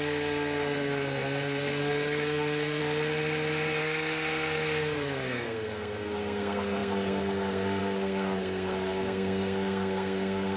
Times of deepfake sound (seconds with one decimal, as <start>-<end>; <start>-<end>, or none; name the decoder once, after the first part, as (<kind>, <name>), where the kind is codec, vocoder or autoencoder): 0.0-2.8 (codec, SNAC); 3.8-10.6